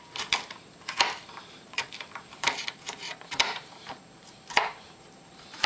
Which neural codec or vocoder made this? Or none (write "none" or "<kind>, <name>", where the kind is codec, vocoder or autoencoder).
vocoder, BigVGAN v2